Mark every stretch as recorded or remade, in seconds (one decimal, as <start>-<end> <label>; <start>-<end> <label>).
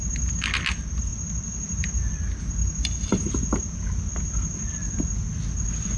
0.0-6.0 recorded